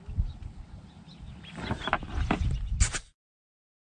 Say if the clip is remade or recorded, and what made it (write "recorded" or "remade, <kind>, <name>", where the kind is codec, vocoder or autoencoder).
recorded